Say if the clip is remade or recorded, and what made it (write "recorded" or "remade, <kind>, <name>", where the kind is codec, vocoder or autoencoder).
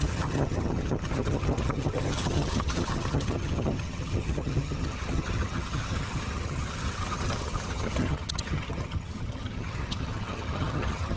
remade, vocoder, HiFi-GAN